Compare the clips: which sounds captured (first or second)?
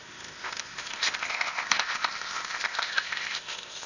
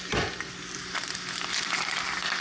second